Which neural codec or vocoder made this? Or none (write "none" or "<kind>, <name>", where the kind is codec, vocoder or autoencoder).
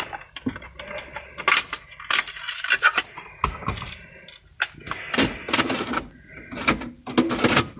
none